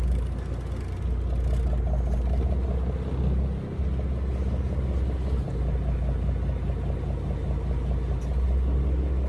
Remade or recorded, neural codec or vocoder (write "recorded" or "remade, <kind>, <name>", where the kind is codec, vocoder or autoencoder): recorded